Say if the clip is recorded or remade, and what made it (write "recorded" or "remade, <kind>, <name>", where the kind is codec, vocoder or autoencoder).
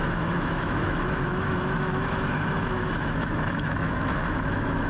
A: remade, autoencoder, DAC-VAE